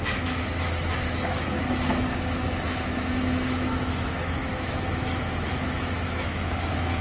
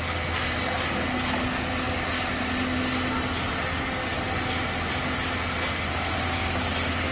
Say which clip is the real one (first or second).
second